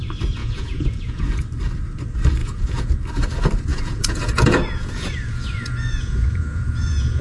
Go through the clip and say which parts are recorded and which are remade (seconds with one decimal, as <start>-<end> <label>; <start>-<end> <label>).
0.0-0.4 recorded; 0.4-1.4 remade; 1.4-2.4 recorded; 2.4-2.9 remade; 2.9-3.7 recorded; 3.7-7.2 remade